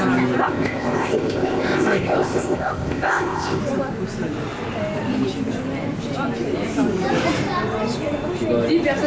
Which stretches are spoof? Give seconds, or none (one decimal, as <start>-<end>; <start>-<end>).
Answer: 0.4-3.6